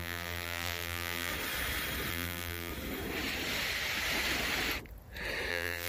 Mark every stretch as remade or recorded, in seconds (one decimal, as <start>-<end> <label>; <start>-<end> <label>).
0.0-1.3 remade; 1.3-2.1 recorded; 2.1-2.7 remade; 2.7-5.5 recorded; 5.5-5.9 remade